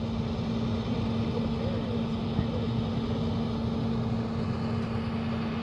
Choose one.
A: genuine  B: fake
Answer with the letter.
A